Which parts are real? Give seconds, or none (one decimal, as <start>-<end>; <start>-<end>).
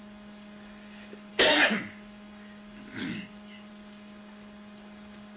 0.0-5.4